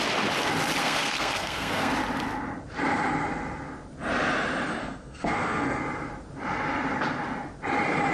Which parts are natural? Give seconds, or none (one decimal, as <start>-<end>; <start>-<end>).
0.0-0.8; 1.9-4.8; 5.8-8.1